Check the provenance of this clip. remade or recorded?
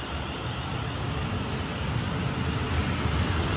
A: recorded